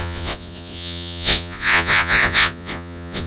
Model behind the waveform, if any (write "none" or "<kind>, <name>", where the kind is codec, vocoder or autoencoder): vocoder, Vocos